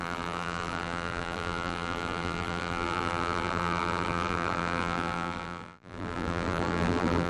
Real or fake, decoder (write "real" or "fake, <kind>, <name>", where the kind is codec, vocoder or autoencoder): fake, vocoder, BigVGAN v2